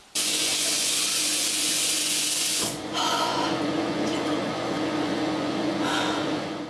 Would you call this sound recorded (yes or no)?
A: no